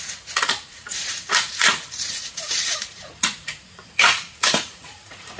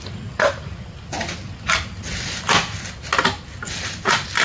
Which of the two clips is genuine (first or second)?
second